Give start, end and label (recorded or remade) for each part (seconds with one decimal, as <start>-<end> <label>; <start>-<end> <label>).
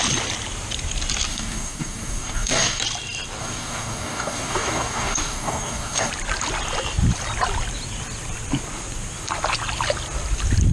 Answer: 0.0-1.3 recorded; 1.3-2.8 remade; 2.8-3.4 recorded; 3.4-6.1 remade; 6.1-10.7 recorded